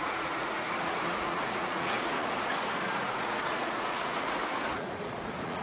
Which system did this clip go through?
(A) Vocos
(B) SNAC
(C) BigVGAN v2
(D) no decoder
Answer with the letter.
A